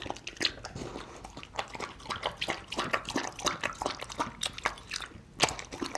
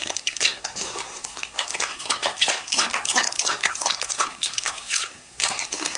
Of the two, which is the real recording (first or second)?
first